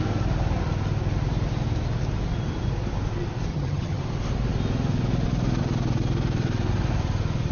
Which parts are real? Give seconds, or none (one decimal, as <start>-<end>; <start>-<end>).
0.0-3.5; 4.0-7.5